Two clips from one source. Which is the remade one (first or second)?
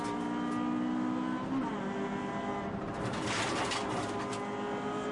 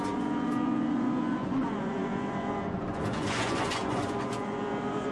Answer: second